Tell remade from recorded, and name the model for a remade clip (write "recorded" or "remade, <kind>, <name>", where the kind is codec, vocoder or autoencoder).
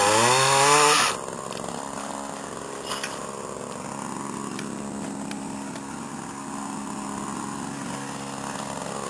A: recorded